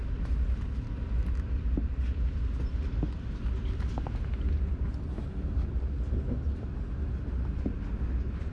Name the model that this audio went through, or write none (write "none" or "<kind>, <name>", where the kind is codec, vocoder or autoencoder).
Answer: none